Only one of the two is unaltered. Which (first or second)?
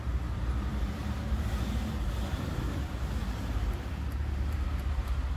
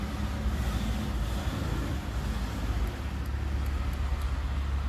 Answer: second